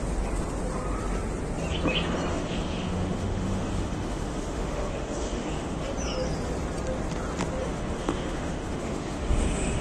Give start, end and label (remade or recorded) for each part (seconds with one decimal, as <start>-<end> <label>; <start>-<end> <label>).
0.0-2.3 recorded; 2.3-5.8 remade; 5.8-7.6 recorded; 7.6-9.8 remade